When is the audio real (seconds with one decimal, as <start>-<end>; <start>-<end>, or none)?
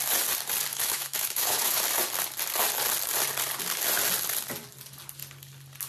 0.0-0.7; 1.8-5.9